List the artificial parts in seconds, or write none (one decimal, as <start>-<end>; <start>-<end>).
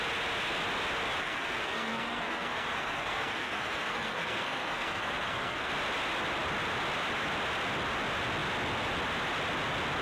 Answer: 1.2-5.7